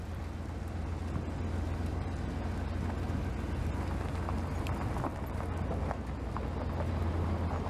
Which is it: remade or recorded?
recorded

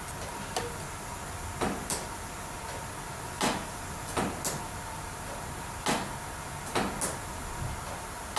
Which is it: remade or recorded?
recorded